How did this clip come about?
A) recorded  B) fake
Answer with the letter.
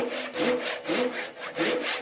A